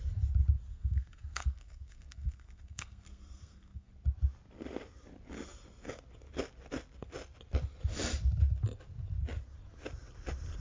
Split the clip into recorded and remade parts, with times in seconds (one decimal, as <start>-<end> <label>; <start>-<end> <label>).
0.0-0.7 recorded; 0.7-3.9 remade; 3.9-10.6 recorded

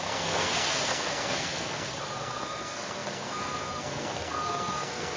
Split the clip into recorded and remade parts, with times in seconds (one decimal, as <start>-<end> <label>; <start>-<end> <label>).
0.0-5.2 remade

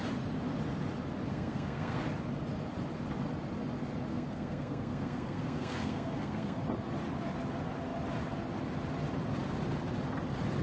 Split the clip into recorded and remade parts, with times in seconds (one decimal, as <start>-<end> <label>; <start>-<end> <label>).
0.0-1.3 recorded; 1.3-2.0 remade; 2.0-4.1 recorded; 4.1-6.6 remade; 6.6-10.6 recorded

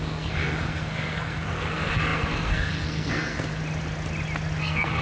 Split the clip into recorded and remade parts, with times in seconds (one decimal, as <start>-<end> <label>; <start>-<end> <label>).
0.0-3.6 remade; 3.6-4.6 recorded; 4.6-5.0 remade

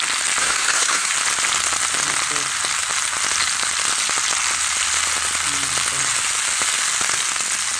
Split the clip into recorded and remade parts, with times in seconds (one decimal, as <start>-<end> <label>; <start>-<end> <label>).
0.0-0.4 recorded; 0.4-1.1 remade; 1.1-7.8 recorded

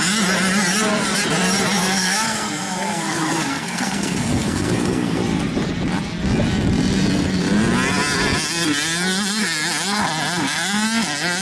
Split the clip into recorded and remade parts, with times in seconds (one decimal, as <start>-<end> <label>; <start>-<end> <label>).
0.0-1.8 recorded; 1.8-5.2 remade; 5.2-11.4 recorded

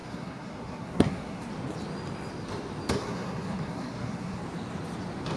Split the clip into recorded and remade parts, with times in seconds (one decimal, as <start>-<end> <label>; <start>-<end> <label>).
0.0-1.5 remade; 1.5-3.0 recorded; 3.0-4.4 remade; 4.4-5.4 recorded